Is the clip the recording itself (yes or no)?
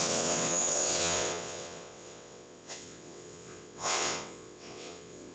no